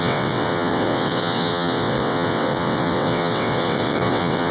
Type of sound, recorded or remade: remade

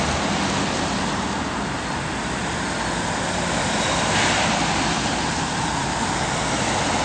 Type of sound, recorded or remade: recorded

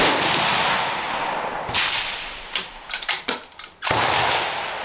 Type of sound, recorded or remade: recorded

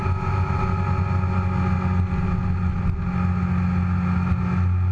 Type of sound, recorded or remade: recorded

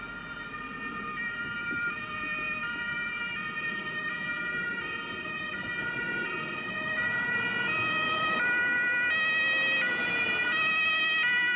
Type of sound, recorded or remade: recorded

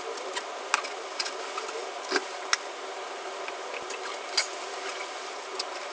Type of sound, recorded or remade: recorded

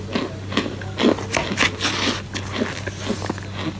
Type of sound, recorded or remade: recorded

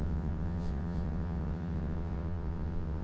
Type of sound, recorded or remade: remade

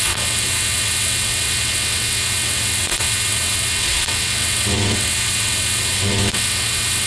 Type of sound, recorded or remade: remade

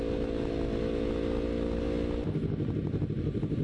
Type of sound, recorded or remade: recorded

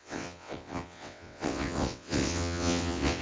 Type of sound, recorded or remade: remade